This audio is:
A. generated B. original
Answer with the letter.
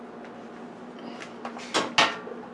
B